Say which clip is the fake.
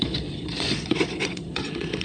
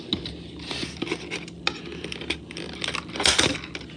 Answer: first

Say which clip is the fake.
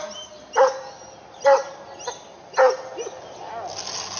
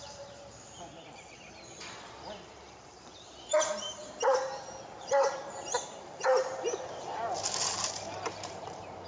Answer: second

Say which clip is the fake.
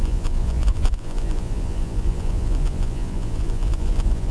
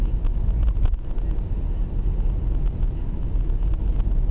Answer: first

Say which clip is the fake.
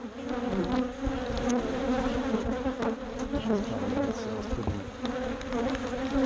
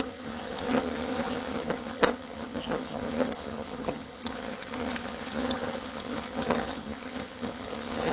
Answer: second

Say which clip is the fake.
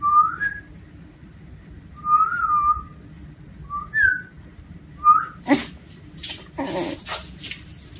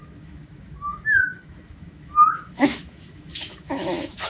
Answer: second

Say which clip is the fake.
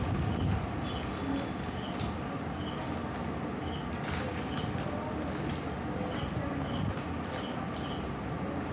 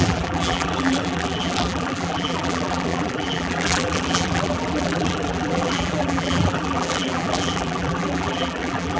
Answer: second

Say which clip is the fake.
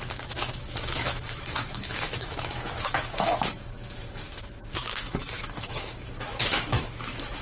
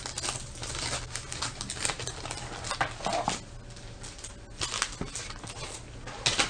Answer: first